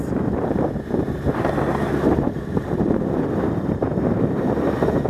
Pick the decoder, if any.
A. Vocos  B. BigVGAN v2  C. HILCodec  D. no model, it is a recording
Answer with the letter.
B